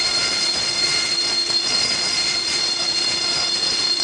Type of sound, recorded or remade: remade